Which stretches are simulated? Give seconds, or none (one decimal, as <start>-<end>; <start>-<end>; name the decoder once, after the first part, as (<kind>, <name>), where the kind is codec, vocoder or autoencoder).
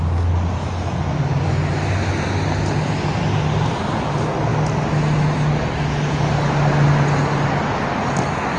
none